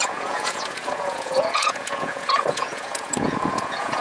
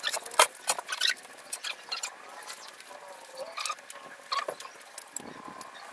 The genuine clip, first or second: second